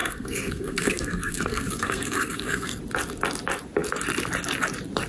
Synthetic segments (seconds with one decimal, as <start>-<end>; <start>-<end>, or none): 0.0-2.8